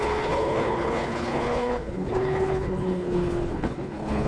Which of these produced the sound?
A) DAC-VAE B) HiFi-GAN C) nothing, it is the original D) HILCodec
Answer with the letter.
D